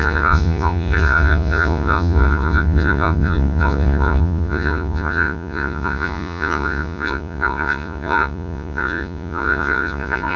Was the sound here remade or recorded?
remade